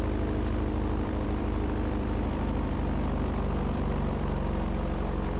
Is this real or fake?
fake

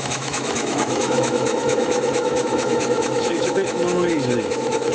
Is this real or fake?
fake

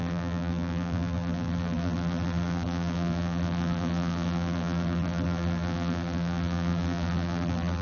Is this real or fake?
fake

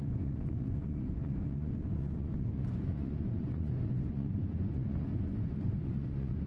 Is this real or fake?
fake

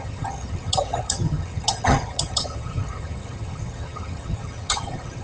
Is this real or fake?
fake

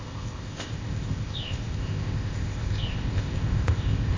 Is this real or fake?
fake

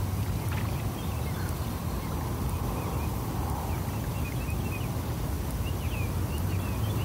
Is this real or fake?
fake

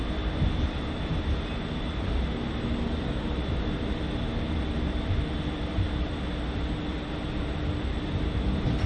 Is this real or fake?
real